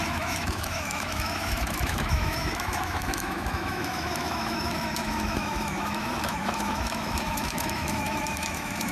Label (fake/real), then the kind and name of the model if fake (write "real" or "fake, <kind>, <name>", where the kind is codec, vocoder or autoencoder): fake, autoencoder, DAC-VAE